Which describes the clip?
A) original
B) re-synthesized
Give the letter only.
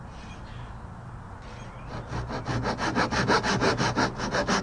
A